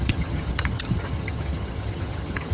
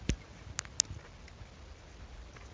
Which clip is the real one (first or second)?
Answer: second